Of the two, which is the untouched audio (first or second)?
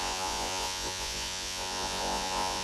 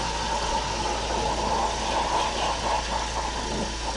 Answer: second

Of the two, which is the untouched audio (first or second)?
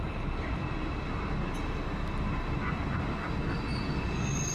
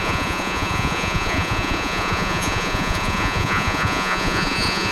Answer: first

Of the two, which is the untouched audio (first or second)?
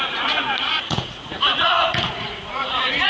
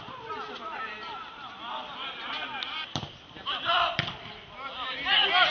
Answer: second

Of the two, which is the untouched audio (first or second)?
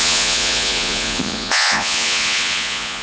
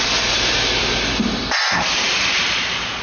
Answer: second